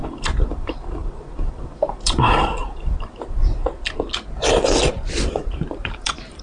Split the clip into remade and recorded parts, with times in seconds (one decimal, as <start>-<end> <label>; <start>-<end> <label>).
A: 0.0-3.6 remade; 3.6-5.3 recorded; 5.3-6.4 remade